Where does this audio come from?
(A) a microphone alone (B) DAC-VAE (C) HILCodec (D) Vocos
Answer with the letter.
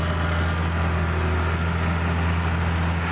A